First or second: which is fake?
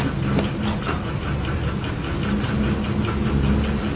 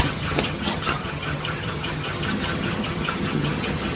second